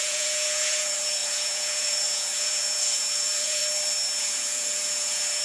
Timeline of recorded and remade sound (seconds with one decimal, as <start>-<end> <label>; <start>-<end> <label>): 0.0-3.6 remade; 3.6-4.2 recorded; 4.2-5.4 remade